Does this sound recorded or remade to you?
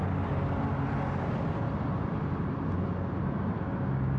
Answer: recorded